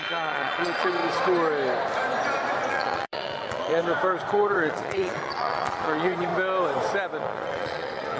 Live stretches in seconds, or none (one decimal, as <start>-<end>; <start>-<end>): 1.0-2.7; 3.8-4.3; 6.3-7.2